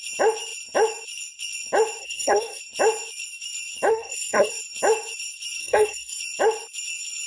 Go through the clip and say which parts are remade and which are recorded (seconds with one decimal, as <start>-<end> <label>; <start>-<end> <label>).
0.0-2.0 recorded; 2.0-2.6 remade; 2.6-3.9 recorded; 3.9-4.5 remade; 4.5-5.6 recorded; 5.6-6.2 remade; 6.2-7.3 recorded